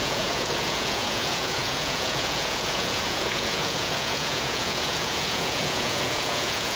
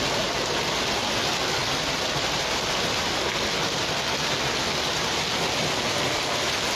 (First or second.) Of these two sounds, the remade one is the first